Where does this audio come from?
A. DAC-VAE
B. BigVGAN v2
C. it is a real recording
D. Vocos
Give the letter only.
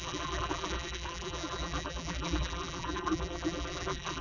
B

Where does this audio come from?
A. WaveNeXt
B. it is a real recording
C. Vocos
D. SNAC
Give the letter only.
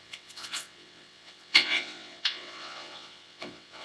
A